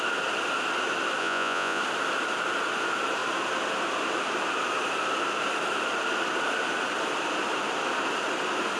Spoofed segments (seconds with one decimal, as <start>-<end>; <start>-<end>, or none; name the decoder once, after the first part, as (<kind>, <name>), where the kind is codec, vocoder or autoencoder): 1.2-1.8 (vocoder, Vocos)